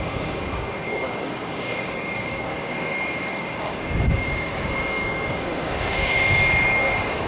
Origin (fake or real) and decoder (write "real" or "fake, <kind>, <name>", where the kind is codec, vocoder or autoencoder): fake, codec, DAC